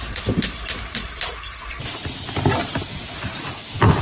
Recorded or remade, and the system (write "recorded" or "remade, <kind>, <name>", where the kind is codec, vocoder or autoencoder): remade, vocoder, BigVGAN v2